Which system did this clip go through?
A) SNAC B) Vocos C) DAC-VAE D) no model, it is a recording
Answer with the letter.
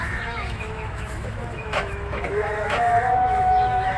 C